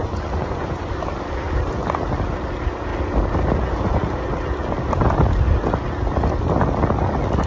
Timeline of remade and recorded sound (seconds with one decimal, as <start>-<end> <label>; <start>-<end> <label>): 0.0-0.9 remade; 0.9-7.5 recorded